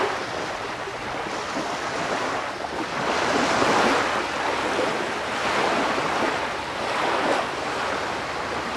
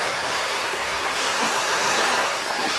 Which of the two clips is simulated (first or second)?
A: second